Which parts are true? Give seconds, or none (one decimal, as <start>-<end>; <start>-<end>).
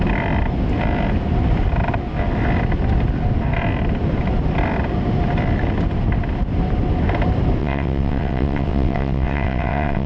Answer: 0.0-7.6